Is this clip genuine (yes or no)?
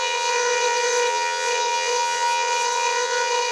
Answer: no